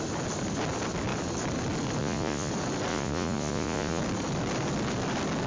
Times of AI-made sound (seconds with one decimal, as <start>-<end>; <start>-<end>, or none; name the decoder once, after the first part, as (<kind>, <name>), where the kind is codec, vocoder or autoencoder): 2.0-2.5 (vocoder, Vocos); 2.9-4.0